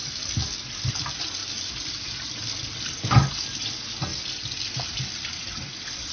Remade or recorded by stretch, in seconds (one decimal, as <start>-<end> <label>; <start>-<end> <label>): 0.0-6.1 recorded